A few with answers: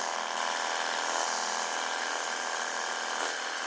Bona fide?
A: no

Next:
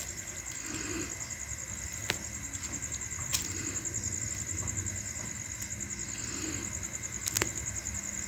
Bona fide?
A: yes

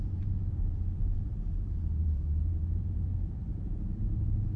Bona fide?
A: no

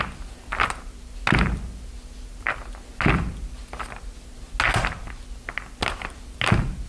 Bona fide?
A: yes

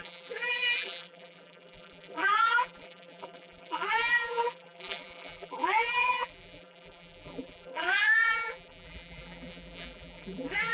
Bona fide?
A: no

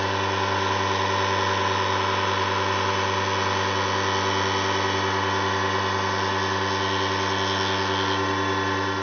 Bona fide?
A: yes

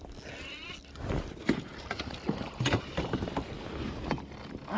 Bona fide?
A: yes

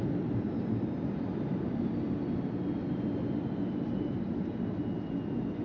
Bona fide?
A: no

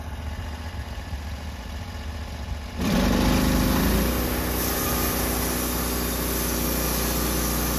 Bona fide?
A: yes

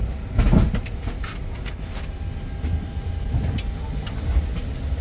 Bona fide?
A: yes